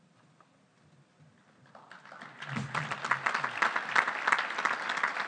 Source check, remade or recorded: recorded